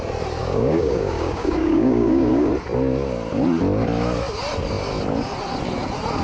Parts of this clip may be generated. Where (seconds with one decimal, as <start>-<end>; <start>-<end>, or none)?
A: 0.4-2.5